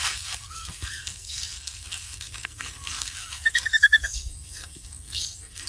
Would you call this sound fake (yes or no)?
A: yes